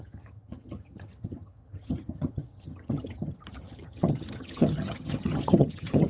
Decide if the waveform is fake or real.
fake